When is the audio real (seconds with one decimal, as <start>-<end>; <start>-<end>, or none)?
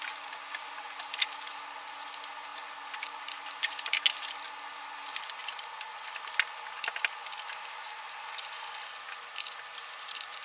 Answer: 0.0-10.4